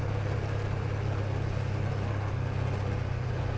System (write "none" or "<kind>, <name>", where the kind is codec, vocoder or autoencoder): none